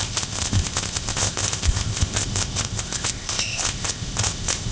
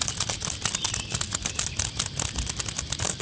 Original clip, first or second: second